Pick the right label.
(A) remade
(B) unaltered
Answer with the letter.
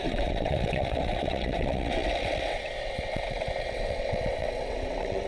A